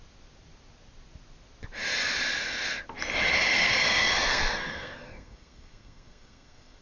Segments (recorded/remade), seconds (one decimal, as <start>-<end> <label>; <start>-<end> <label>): 0.0-3.5 recorded; 3.5-6.8 remade